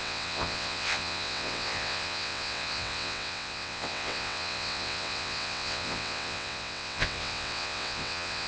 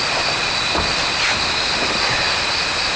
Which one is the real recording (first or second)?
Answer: second